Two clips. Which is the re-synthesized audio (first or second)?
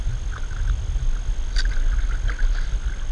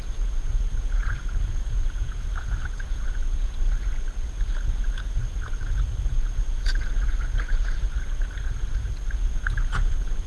second